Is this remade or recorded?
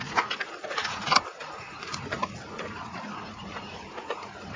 remade